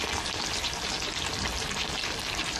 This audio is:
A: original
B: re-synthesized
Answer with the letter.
A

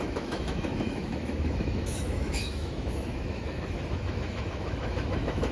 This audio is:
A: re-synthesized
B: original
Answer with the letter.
A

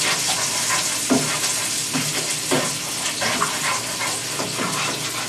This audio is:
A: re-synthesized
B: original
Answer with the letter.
B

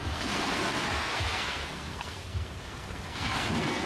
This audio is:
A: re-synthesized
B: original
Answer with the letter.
A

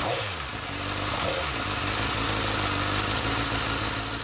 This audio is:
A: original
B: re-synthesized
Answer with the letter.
A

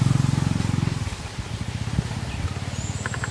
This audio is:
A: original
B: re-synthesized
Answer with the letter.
A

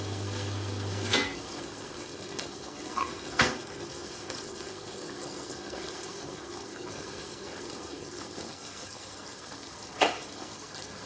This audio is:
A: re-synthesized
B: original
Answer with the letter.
A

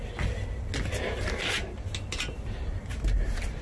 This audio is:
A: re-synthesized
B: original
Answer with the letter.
B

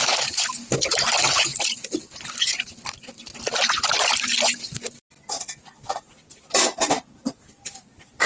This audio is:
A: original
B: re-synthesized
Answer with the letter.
A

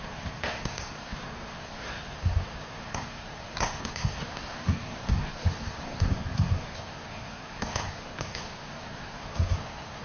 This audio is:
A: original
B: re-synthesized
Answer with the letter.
B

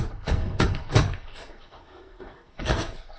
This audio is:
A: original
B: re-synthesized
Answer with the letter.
B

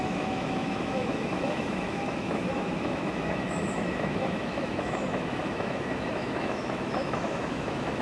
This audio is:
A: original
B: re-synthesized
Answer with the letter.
B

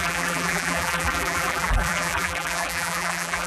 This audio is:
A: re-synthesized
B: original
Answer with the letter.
A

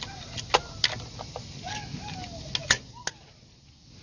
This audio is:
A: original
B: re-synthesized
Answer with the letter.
A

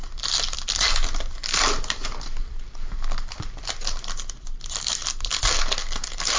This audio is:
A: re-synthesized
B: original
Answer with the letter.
B